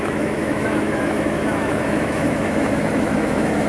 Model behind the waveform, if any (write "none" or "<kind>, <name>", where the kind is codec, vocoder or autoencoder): autoencoder, DAC-VAE